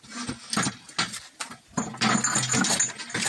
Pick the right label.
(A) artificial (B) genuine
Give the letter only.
B